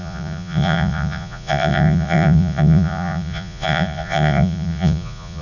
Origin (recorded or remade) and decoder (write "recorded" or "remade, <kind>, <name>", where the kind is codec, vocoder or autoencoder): remade, vocoder, Vocos